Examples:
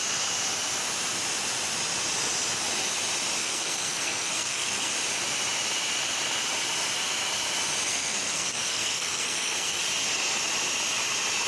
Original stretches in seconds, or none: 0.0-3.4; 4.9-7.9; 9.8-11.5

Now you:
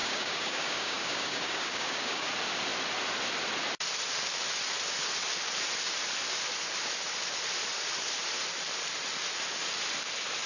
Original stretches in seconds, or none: 2.3-10.5

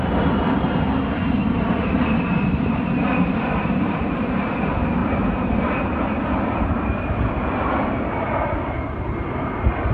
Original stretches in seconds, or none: 0.0-1.4; 4.2-5.0; 7.7-9.9

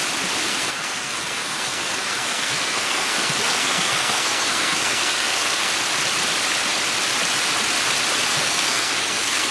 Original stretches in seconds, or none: 0.0-0.5; 5.7-8.3

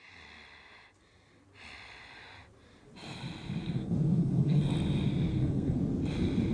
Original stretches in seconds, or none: 0.0-3.6; 4.7-5.3; 5.8-6.5

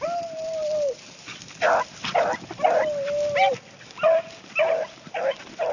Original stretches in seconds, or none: 0.0-5.7

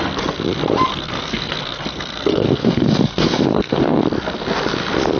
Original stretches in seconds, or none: 0.0-0.9; 4.0-5.2